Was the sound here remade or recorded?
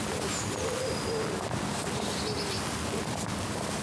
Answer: recorded